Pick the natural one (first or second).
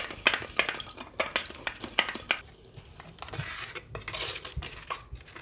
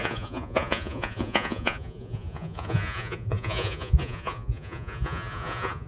first